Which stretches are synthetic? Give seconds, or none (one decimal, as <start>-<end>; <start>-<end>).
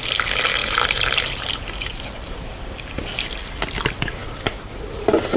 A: 0.6-3.8; 4.2-4.7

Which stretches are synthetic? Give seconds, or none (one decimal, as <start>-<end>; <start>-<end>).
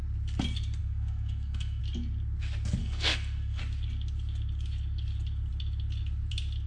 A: 0.8-1.8; 2.8-3.6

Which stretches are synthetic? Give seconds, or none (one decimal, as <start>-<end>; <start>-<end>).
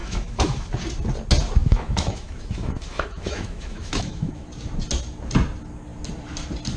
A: 0.0-0.7; 1.6-4.5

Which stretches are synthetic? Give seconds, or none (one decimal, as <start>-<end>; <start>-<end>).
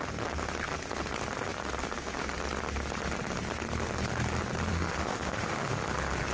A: 4.7-5.7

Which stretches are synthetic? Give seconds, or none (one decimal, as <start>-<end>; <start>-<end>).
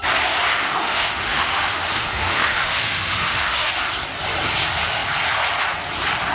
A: 0.5-3.7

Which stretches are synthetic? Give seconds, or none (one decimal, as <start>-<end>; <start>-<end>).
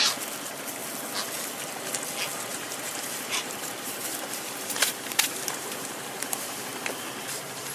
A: 2.5-6.7